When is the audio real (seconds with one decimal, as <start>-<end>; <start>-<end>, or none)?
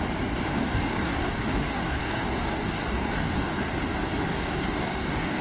0.0-0.5; 3.7-4.3